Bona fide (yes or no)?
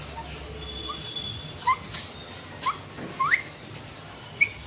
yes